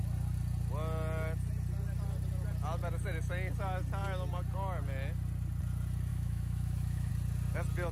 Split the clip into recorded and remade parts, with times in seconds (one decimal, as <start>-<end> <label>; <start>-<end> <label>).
0.0-6.1 recorded; 6.1-7.1 remade; 7.1-7.9 recorded